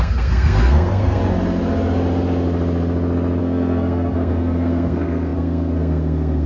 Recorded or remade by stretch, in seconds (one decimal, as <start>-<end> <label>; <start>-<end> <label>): 0.0-1.2 remade; 1.2-3.4 recorded; 3.4-6.5 remade